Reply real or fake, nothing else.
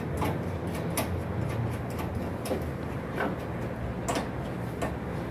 real